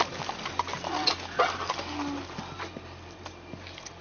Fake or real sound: real